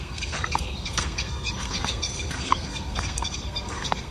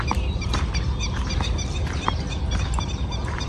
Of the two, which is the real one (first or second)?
second